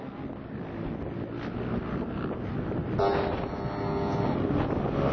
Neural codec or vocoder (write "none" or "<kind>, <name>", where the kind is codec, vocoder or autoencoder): none